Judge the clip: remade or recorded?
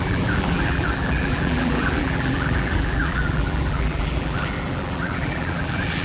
remade